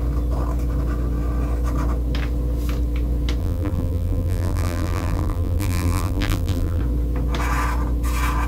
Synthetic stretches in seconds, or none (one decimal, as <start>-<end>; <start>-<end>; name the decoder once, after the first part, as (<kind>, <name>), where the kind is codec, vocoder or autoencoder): 3.4-6.8 (vocoder, BigVGAN v2)